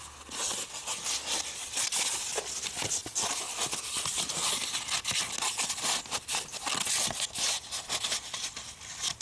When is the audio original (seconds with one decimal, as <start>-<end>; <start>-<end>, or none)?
0.0-9.2